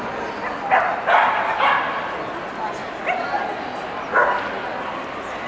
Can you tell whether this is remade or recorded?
recorded